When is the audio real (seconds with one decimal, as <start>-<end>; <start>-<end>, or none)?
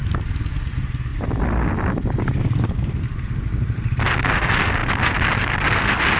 0.0-6.2